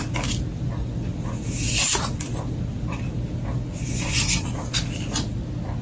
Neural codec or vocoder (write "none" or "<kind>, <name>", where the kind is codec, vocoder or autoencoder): none